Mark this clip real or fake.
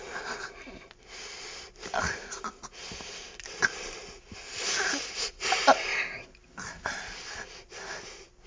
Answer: real